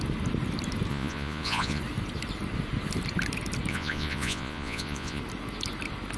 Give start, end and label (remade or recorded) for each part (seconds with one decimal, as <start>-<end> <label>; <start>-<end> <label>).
0.0-0.9 recorded; 0.9-1.8 remade; 1.8-3.7 recorded; 3.7-5.2 remade; 5.2-6.2 recorded